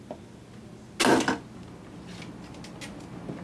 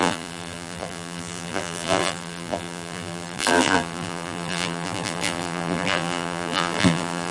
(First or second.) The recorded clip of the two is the first